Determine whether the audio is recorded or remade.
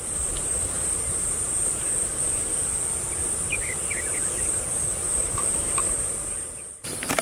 remade